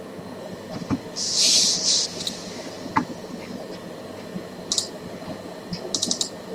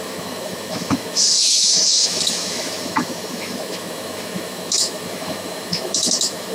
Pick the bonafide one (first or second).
first